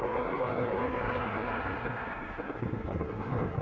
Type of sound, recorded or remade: remade